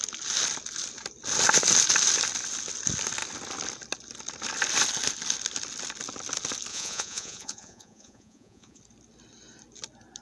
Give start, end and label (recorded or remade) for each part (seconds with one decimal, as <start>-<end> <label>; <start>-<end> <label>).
0.0-6.7 recorded; 6.7-8.8 remade; 8.8-10.2 recorded